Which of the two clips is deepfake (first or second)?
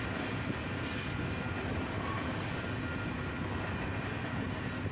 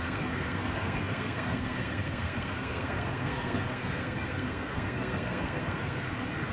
second